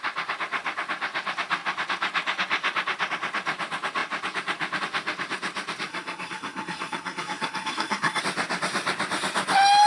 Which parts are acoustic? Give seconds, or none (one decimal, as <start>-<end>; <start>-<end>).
0.0-5.9; 8.2-9.9